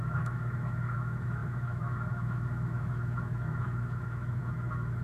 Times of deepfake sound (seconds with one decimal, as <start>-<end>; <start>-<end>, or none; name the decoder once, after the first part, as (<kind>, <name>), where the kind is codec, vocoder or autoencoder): 0.0-5.0 (autoencoder, DAC-VAE)